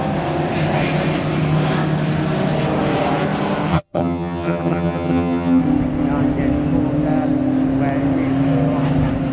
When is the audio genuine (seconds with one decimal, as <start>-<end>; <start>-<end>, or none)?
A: 0.0-3.7; 5.6-9.3